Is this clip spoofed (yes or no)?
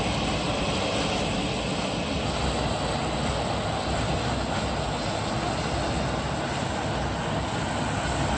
no